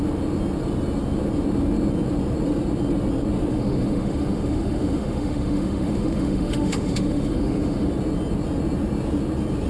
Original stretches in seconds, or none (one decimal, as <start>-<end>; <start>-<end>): 0.0-3.5; 7.9-9.7